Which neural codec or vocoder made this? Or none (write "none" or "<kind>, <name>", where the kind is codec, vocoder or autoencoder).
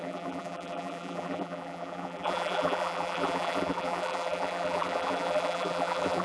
vocoder, BigVGAN v2